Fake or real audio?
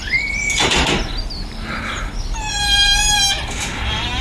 real